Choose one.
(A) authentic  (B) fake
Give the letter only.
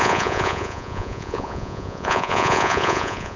B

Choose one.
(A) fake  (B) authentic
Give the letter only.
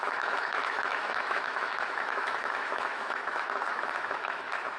A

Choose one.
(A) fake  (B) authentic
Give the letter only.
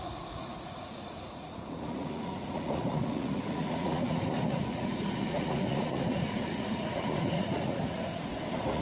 A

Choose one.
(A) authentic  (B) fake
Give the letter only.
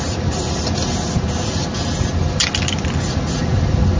A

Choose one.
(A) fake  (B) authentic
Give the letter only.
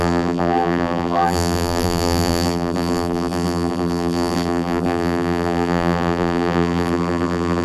A